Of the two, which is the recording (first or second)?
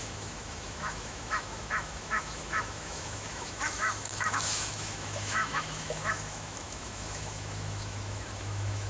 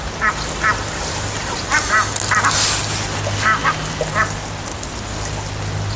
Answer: second